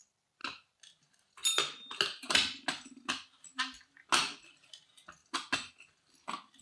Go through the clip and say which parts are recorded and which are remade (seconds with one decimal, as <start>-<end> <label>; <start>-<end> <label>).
0.0-6.6 recorded